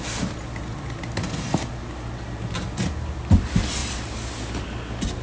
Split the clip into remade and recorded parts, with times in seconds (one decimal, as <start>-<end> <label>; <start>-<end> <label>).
0.0-5.2 recorded